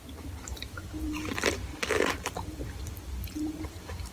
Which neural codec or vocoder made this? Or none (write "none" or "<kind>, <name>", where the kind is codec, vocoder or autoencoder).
vocoder, BigVGAN v2